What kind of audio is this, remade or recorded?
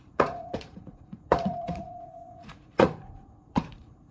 remade